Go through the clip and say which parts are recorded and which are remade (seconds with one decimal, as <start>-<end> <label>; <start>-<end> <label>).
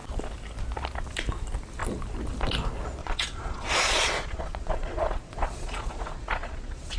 0.0-3.0 recorded; 3.0-7.0 remade